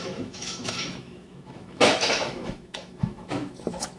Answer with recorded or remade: remade